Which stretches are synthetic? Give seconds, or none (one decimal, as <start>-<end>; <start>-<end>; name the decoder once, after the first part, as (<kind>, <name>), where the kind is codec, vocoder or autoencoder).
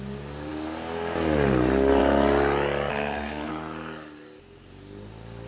2.9-3.5 (codec, SNAC)